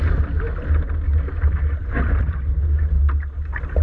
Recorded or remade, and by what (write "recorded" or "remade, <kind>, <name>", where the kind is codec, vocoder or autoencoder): recorded